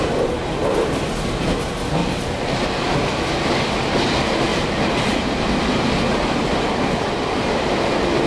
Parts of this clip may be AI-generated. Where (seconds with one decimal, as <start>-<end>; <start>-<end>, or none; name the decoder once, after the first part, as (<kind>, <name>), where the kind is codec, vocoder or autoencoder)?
2.0-2.7 (vocoder, BigVGAN v2); 4.5-5.2